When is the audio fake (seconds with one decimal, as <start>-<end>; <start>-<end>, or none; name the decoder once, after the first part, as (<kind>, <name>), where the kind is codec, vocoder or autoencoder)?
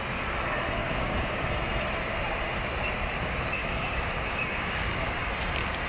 0.8-1.5 (codec, DAC); 3.6-5.2